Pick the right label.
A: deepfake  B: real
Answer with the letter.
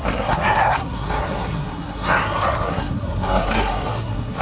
A